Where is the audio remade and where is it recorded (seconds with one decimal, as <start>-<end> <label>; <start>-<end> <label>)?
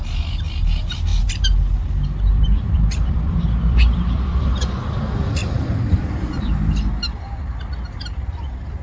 0.0-1.1 recorded; 1.1-4.9 remade; 4.9-5.4 recorded; 5.4-6.8 remade; 6.8-8.8 recorded